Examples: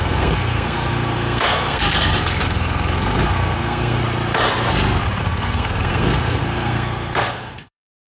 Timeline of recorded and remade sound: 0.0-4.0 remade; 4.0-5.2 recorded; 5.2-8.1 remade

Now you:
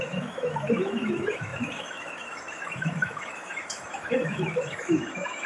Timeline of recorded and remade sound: 0.0-5.5 remade

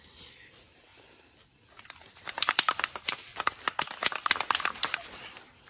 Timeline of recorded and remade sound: 0.0-0.9 recorded; 0.9-2.7 remade; 2.7-3.3 recorded; 3.3-5.7 remade